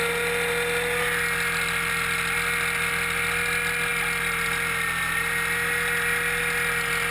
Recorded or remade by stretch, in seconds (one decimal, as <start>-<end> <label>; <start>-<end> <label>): 0.0-7.1 recorded